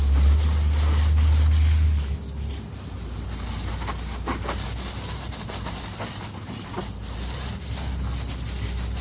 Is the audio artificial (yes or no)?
no